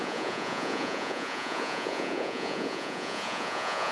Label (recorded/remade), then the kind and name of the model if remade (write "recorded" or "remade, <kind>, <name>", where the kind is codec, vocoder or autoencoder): remade, vocoder, Vocos